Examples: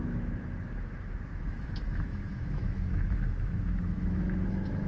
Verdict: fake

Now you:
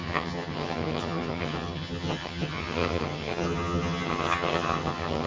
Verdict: fake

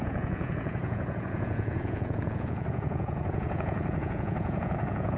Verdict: fake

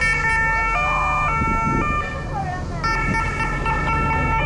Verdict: real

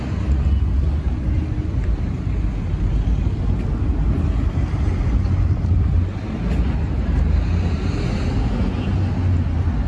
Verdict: real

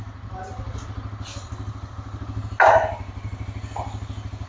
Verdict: real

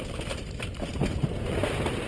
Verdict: real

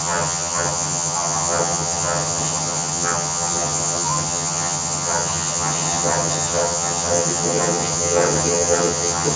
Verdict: fake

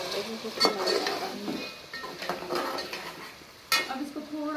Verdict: real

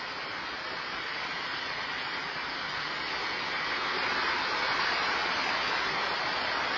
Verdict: real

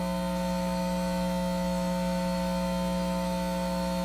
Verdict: fake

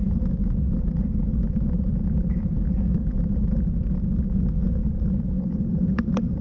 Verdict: real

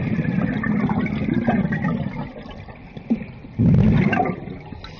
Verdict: real